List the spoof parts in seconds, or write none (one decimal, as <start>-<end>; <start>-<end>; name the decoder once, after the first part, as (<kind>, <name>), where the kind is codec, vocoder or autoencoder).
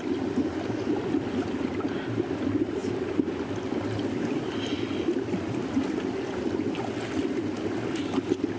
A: none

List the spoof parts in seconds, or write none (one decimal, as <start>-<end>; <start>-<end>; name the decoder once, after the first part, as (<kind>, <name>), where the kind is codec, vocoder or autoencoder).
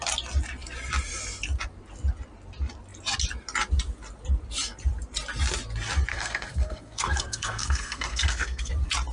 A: 6.1-8.7 (codec, SNAC)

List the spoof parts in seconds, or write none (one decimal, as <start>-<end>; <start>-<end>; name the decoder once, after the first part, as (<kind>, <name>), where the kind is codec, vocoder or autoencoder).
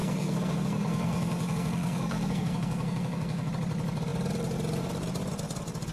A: 0.0-3.5 (codec, SNAC)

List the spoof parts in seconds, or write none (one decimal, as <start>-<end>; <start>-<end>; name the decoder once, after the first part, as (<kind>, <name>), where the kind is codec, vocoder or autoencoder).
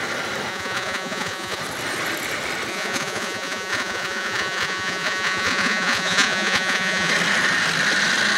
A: 0.5-1.6 (vocoder, Vocos); 2.7-7.1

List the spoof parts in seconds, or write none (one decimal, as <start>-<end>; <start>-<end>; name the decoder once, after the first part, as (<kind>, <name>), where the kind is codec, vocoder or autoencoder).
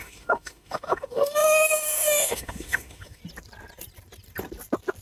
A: 0.0-3.2 (autoencoder, DAC-VAE)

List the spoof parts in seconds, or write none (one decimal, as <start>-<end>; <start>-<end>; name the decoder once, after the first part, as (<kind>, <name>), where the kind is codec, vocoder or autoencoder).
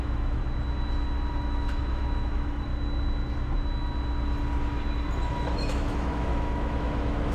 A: 0.0-0.4 (autoencoder, DAC-VAE); 1.3-2.7; 5.3-7.3